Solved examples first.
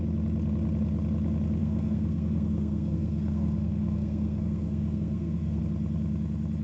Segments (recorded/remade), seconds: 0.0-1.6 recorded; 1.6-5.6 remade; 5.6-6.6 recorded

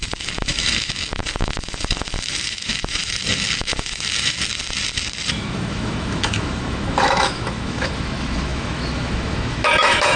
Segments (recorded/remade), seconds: 0.0-4.5 remade; 4.5-5.3 recorded; 5.3-10.2 remade

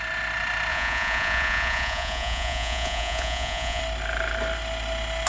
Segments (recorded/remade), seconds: 0.0-0.7 recorded; 0.7-3.8 remade; 3.8-5.3 recorded